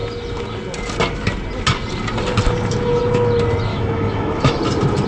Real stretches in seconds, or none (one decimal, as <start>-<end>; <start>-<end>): 0.0-3.7; 4.6-5.1